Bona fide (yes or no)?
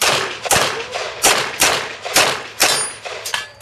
yes